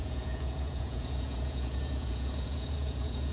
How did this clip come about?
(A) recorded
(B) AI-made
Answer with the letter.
B